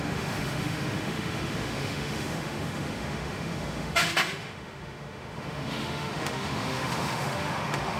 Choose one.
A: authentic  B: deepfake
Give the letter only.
B